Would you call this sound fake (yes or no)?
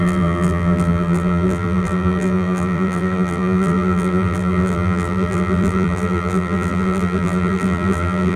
yes